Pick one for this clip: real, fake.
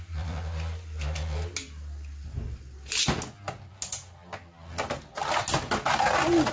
real